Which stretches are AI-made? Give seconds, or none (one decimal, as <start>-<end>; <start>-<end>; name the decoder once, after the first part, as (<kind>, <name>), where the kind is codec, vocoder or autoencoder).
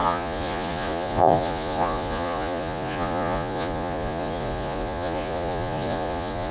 0.0-6.5 (vocoder, Vocos)